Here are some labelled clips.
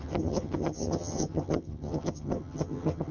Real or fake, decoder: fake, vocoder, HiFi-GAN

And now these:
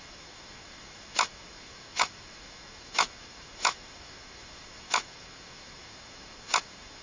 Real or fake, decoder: fake, autoencoder, DAC-VAE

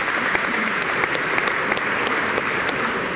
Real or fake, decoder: fake, vocoder, BigVGAN v2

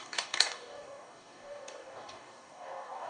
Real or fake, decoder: fake, codec, DAC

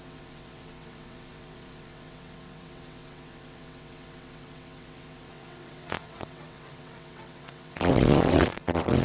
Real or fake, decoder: fake, vocoder, WaveNeXt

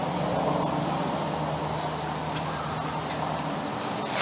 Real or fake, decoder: real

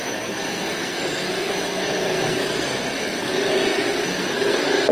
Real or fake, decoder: fake, codec, SNAC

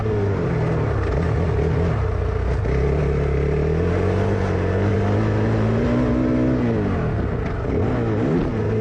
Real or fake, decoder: real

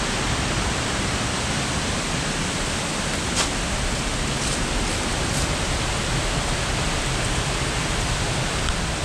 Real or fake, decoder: real